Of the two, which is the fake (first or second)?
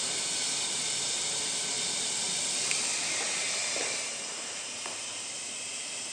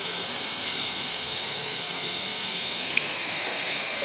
second